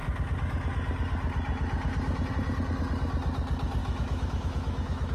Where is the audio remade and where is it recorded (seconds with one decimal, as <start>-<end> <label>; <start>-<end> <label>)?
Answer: 0.0-3.8 recorded; 3.8-5.1 remade